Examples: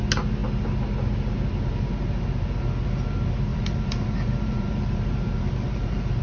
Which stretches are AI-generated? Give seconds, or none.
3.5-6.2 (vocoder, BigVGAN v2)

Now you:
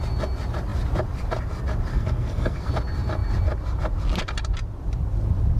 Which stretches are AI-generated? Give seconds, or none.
1.9-2.7 (codec, SNAC)

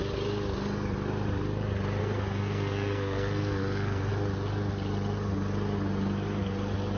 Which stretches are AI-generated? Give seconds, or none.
2.0-4.1 (codec, SNAC)

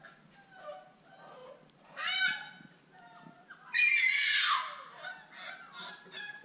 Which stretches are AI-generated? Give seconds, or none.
none